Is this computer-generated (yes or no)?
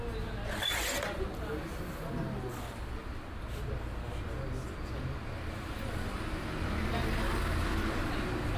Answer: no